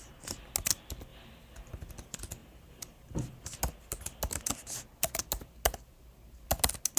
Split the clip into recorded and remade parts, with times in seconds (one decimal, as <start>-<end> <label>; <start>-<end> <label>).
0.0-1.1 recorded; 1.1-1.9 remade; 1.9-2.4 recorded; 2.4-3.3 remade; 3.3-7.0 recorded